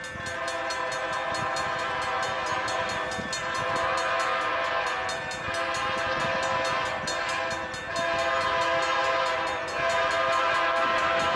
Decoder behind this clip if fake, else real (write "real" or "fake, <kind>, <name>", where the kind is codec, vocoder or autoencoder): real